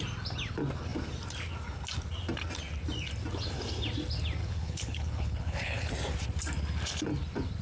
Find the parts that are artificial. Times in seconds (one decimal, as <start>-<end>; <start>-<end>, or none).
4.4-5.9